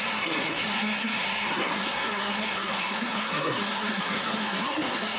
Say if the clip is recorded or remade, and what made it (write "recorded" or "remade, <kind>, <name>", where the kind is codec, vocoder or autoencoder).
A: remade, codec, SNAC